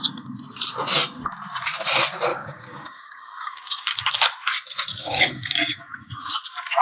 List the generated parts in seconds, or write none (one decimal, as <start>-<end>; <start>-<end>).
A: 2.3-4.1; 4.9-6.3